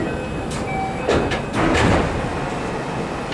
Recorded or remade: recorded